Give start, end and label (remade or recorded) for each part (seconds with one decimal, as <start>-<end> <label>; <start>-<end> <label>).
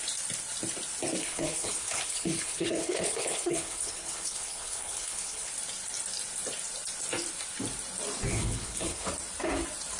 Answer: 0.0-1.2 recorded; 1.2-5.5 remade; 5.5-8.3 recorded; 8.3-9.1 remade; 9.1-10.0 recorded